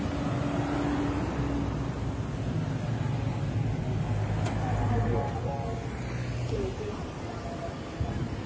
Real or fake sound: real